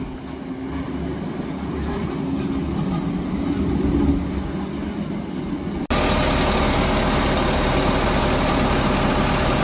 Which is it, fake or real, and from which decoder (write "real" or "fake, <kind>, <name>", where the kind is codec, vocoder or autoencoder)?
real